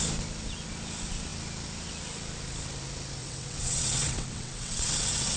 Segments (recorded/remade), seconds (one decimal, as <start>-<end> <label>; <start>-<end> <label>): 0.0-3.2 recorded; 3.2-5.4 remade